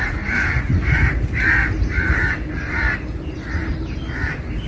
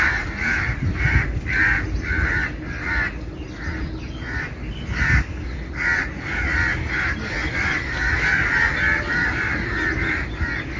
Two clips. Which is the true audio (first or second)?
second